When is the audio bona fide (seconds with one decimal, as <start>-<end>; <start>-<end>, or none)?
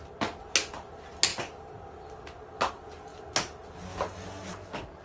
0.0-5.0